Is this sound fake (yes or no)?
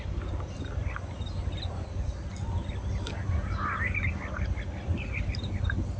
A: no